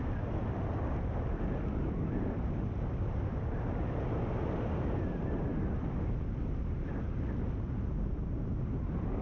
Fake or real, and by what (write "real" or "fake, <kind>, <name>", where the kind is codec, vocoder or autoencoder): real